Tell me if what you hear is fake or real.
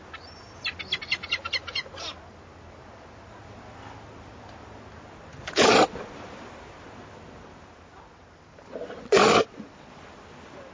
real